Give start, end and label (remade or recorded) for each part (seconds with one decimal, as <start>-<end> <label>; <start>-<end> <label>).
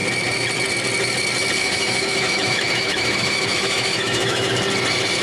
0.0-1.6 recorded; 1.6-4.5 remade; 4.5-5.2 recorded